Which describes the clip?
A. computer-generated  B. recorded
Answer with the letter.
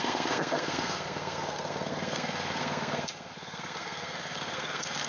A